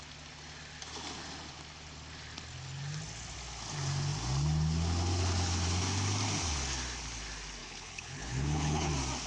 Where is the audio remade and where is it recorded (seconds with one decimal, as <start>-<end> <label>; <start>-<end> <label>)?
0.0-7.6 recorded; 7.6-8.9 remade; 8.9-9.3 recorded

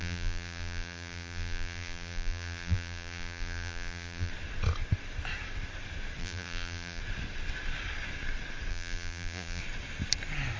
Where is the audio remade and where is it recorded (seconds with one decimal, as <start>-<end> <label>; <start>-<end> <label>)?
0.0-4.3 remade; 4.3-6.2 recorded; 6.2-7.0 remade; 7.0-8.7 recorded; 8.7-9.6 remade; 9.6-10.6 recorded